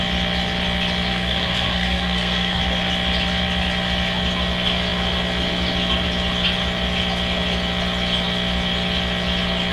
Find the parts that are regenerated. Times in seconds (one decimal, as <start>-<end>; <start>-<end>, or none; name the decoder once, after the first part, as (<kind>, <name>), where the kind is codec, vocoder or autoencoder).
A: 1.1-2.6 (codec, SNAC)